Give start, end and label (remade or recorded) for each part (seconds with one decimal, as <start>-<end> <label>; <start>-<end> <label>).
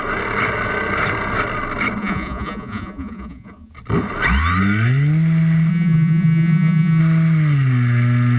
0.0-2.0 recorded; 2.0-3.7 remade; 3.7-5.7 recorded; 5.7-7.0 remade; 7.0-8.4 recorded